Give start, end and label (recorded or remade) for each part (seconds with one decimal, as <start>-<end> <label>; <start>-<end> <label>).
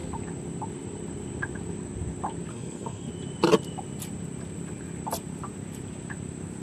0.0-2.5 recorded; 2.5-3.1 remade; 3.1-6.6 recorded